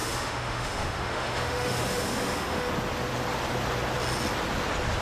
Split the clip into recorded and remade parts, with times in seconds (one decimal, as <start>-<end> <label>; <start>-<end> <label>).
0.0-2.7 remade; 2.7-5.0 recorded